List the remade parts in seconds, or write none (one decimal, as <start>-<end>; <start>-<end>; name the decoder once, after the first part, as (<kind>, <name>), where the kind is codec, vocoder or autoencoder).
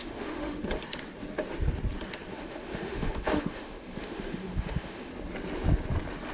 0.0-0.6 (autoencoder, DAC-VAE); 2.3-5.1